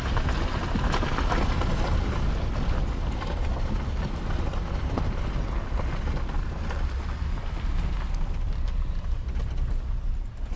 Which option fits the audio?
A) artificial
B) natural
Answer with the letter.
B